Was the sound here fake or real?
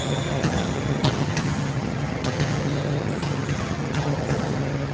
fake